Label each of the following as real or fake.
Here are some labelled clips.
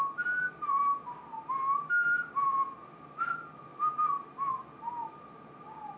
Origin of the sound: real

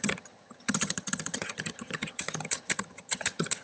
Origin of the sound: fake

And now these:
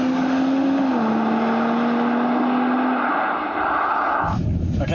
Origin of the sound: real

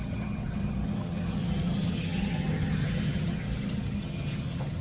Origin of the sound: fake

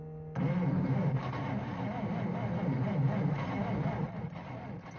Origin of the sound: real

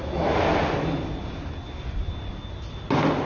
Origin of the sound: real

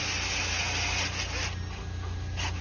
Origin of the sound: real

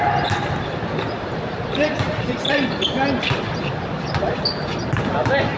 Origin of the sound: real